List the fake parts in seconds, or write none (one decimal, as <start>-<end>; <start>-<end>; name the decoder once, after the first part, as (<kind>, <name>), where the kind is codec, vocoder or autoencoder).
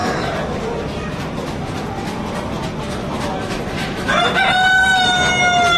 3.0-4.2 (autoencoder, DAC-VAE)